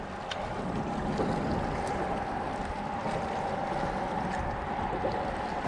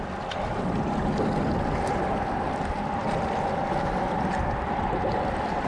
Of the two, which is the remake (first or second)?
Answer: second